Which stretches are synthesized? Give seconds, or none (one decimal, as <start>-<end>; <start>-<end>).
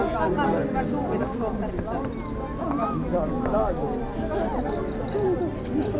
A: none